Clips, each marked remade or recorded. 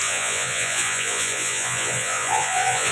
remade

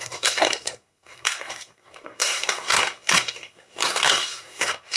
remade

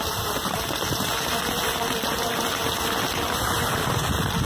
recorded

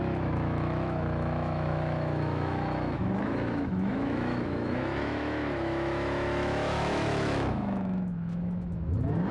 remade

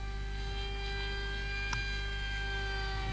recorded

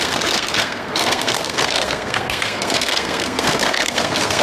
remade